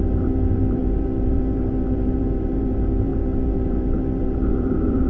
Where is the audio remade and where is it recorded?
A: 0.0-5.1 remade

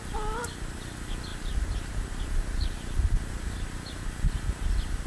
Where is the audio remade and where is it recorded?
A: 0.0-1.3 recorded; 1.3-3.3 remade; 3.3-5.1 recorded

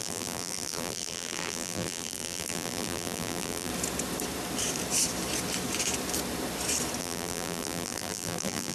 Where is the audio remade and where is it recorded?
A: 0.0-3.7 remade; 3.7-7.0 recorded; 7.0-8.7 remade